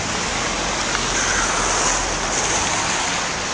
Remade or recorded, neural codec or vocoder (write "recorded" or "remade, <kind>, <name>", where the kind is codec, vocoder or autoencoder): recorded